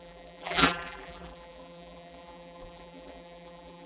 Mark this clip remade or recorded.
remade